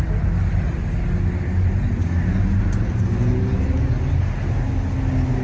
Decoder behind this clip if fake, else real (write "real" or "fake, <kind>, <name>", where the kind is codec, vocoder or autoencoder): real